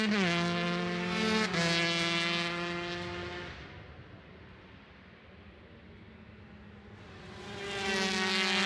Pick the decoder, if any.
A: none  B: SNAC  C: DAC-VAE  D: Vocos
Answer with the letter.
A